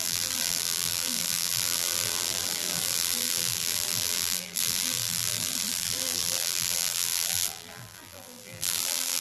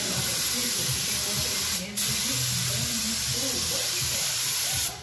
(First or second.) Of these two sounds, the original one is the second